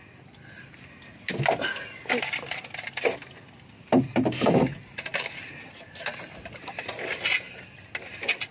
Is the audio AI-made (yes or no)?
no